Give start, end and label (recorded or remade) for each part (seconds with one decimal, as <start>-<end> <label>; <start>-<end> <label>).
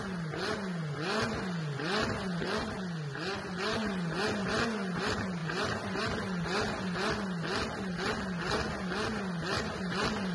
0.0-10.3 recorded